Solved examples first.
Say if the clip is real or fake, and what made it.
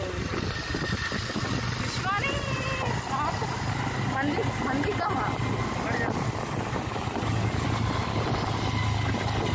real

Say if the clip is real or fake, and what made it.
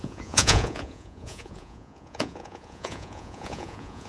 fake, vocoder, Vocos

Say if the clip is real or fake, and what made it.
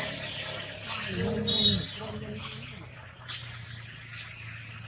real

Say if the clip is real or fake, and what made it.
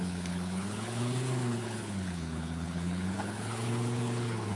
fake, codec, HILCodec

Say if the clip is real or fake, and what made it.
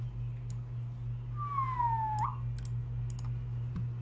real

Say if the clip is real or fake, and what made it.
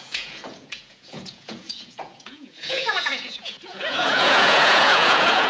fake, vocoder, Vocos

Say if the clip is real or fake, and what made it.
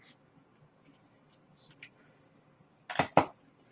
real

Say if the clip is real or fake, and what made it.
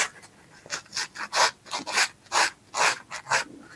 real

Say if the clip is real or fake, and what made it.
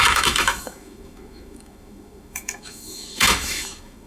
fake, autoencoder, DAC-VAE